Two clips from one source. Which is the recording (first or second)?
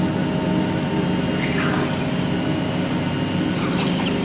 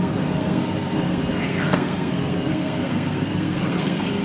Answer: first